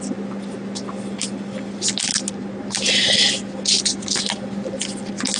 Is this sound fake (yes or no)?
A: no